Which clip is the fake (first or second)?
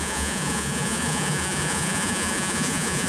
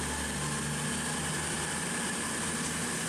first